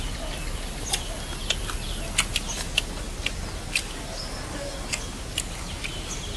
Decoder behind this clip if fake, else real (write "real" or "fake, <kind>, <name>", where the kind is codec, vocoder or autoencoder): real